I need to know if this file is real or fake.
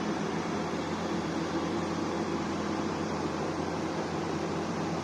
fake